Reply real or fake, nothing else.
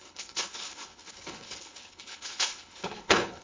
fake